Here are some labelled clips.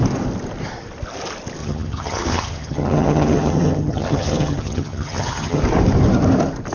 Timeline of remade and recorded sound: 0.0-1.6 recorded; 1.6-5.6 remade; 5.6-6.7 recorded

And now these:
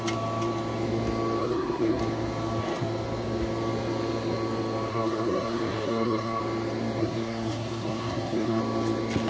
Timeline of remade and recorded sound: 0.0-1.4 recorded; 1.4-2.0 remade; 2.0-4.9 recorded; 4.9-6.4 remade; 6.4-7.0 recorded; 7.0-8.6 remade; 8.6-9.3 recorded

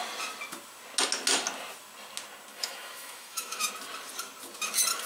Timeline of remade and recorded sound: 0.0-2.5 recorded; 2.5-3.7 remade; 3.7-5.1 recorded